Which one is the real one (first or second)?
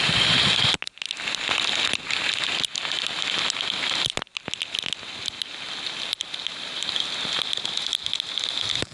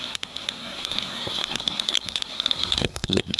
first